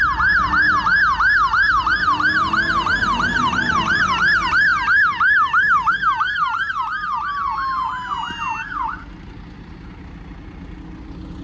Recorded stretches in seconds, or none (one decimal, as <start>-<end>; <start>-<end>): 0.0-11.4